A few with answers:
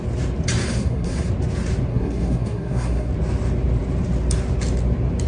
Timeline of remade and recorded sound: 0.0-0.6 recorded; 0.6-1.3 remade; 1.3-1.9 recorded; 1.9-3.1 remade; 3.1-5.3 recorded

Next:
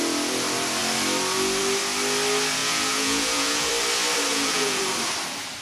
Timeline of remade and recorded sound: 0.0-2.6 recorded; 2.6-3.7 remade; 3.7-4.3 recorded; 4.3-4.8 remade; 4.8-5.6 recorded

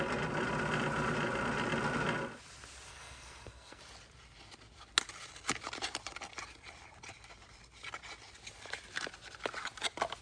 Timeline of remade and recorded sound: 0.0-2.9 recorded; 2.9-3.8 remade; 3.8-10.2 recorded

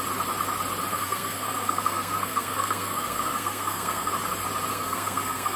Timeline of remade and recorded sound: 0.0-0.9 recorded; 0.9-4.1 remade; 4.1-4.7 recorded; 4.7-5.6 remade